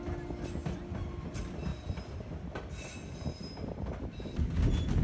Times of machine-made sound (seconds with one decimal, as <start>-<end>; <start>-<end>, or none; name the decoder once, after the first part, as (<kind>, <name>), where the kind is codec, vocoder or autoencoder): none